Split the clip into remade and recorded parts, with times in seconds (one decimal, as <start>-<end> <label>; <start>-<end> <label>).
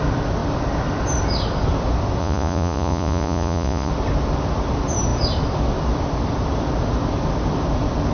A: 0.0-2.2 recorded; 2.2-3.9 remade; 3.9-8.1 recorded